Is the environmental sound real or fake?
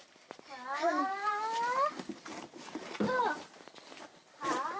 fake